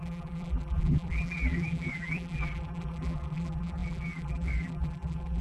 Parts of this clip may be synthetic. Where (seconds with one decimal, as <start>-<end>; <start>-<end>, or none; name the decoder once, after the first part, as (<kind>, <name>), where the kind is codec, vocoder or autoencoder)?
0.0-5.4 (vocoder, BigVGAN v2)